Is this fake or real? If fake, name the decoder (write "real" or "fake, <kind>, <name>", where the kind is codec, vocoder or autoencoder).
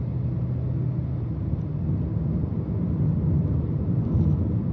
real